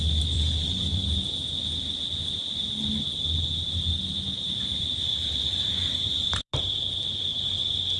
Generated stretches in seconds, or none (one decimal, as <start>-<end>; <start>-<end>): 0.0-0.9; 4.5-7.3

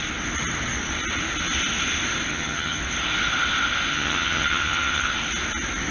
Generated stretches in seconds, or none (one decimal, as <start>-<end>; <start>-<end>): 2.3-2.8; 3.9-5.1